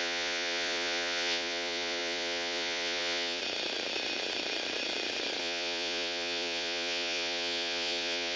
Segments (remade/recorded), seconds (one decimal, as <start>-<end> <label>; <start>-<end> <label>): 0.0-3.4 remade; 3.4-5.4 recorded; 5.4-8.4 remade